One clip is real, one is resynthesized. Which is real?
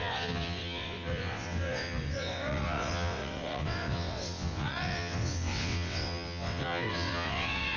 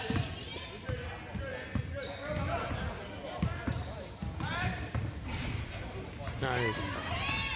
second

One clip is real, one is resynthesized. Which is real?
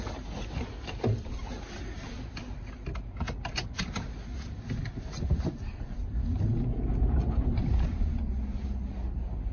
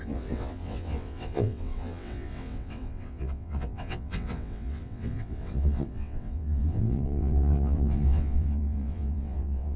first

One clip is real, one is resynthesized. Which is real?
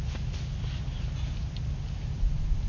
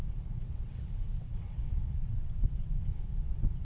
first